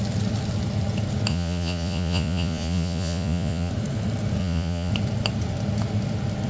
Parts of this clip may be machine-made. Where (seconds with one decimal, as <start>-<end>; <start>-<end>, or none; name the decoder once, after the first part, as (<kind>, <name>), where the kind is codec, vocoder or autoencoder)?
1.3-3.7 (vocoder, Vocos); 4.4-4.9